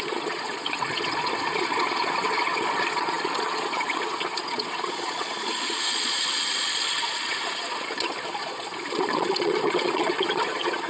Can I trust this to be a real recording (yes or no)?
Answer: no